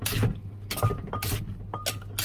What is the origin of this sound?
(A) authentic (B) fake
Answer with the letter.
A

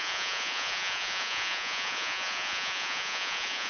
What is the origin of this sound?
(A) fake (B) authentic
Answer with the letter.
A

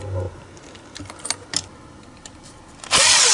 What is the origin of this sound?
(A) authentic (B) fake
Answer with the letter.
A